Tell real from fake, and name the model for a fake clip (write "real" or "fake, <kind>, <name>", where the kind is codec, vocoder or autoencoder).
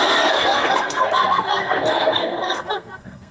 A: fake, codec, SNAC